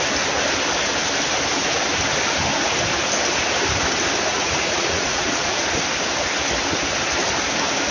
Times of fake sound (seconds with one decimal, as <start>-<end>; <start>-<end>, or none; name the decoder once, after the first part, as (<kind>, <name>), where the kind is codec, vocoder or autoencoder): 4.3-5.6 (vocoder, Vocos)